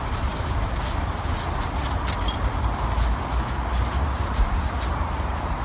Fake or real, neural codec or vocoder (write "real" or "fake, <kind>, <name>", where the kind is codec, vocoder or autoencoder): real